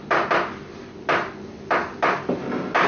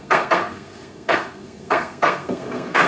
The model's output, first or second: second